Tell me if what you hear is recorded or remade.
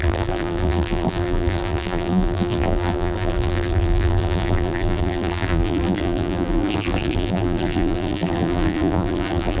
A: remade